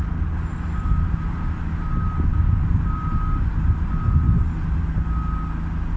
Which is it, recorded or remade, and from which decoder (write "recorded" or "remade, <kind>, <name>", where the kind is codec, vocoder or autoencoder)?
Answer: recorded